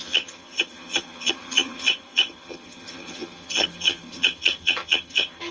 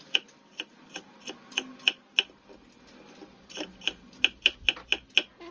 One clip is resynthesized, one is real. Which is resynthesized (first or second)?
first